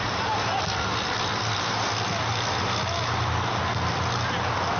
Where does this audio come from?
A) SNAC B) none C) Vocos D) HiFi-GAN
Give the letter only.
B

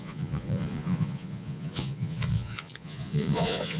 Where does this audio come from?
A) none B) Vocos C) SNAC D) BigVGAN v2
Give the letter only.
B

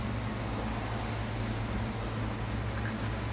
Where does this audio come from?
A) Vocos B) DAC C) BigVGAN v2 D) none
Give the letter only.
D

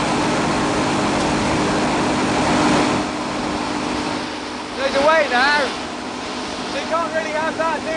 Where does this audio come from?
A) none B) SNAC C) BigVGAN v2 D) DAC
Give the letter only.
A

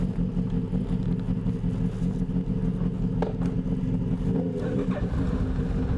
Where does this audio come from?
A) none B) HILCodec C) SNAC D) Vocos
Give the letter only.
A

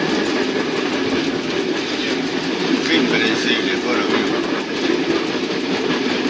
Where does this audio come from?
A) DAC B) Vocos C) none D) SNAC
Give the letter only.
C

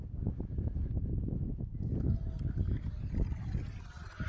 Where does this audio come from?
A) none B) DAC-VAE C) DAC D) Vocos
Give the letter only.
A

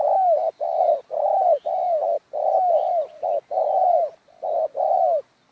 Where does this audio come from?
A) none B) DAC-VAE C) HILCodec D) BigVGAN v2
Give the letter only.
A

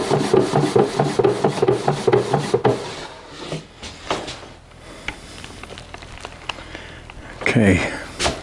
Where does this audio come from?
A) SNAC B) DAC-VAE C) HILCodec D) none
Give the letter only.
D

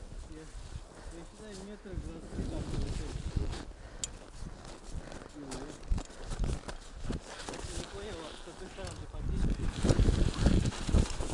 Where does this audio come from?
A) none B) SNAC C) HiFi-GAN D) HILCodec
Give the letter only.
A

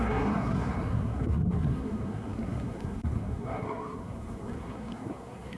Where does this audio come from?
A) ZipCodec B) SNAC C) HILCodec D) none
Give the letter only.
B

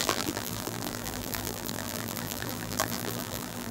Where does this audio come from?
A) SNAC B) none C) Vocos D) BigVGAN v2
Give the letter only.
D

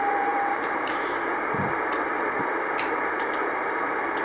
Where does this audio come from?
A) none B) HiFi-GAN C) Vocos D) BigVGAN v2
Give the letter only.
D